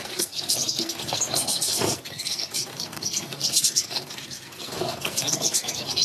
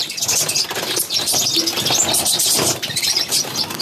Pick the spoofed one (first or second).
first